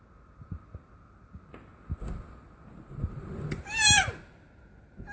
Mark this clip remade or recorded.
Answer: recorded